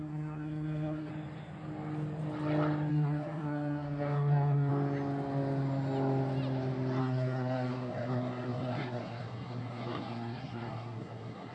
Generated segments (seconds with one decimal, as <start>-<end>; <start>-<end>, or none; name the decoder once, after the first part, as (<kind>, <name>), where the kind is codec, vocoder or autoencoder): 0.0-1.1 (codec, SNAC); 2.9-4.7; 7.0-11.5